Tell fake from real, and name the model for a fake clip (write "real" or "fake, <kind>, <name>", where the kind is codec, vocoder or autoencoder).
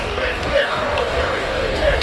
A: fake, codec, DAC